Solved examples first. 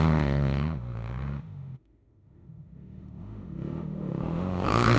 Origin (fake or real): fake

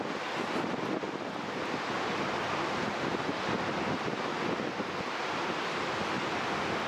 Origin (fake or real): real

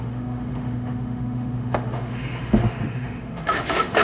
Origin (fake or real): fake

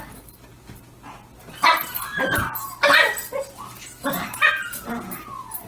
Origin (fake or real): real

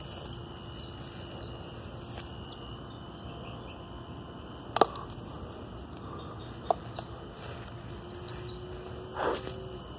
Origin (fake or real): real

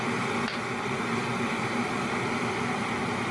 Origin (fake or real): real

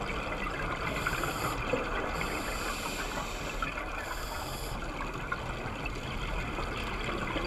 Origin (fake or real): real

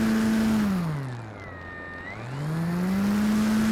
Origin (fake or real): real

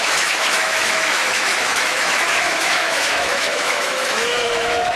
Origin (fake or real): fake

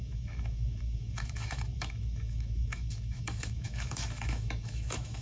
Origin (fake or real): fake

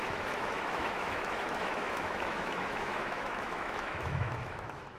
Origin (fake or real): fake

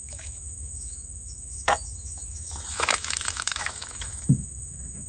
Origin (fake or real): fake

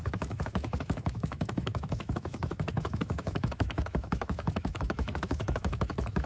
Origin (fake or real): fake